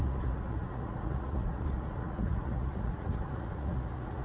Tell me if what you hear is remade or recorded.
remade